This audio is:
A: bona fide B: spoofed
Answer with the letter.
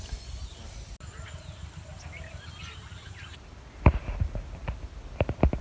A